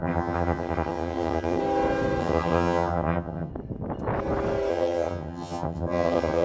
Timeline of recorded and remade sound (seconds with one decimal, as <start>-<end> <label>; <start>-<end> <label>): 0.0-1.6 remade; 1.6-2.2 recorded; 2.2-3.5 remade; 3.5-4.7 recorded; 4.7-6.4 remade